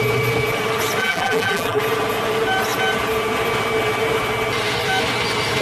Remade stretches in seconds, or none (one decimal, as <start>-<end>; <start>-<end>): 1.0-1.8